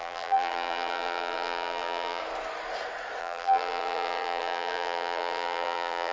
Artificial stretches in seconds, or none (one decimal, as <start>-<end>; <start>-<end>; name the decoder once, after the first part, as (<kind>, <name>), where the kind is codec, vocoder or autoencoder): 0.0-2.2 (vocoder, BigVGAN v2); 3.2-6.1